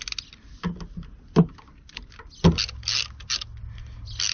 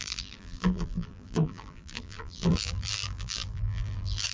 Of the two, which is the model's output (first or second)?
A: second